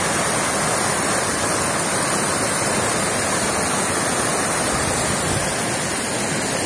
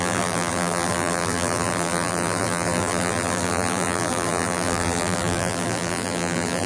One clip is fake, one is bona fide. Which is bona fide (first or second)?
first